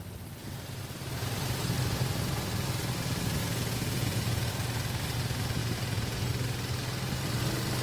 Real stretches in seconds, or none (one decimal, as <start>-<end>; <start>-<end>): 0.0-3.4; 4.5-5.6; 6.3-7.8